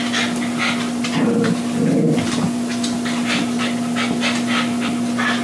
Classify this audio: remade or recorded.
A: recorded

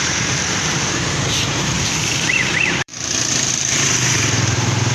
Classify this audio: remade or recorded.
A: remade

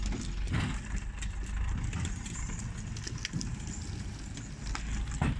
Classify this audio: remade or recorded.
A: recorded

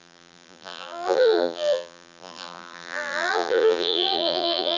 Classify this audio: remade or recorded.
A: remade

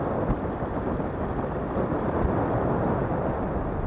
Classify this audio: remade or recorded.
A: recorded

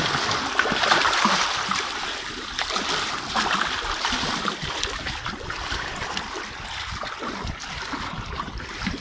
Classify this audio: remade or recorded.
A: remade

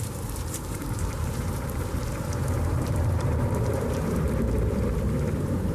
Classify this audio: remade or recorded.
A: remade